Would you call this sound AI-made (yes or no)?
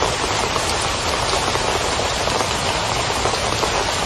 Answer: no